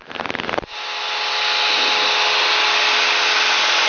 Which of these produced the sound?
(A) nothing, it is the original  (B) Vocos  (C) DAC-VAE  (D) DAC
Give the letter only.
A